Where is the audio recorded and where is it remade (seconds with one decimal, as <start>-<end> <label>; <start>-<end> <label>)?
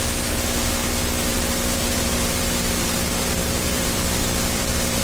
0.0-5.0 remade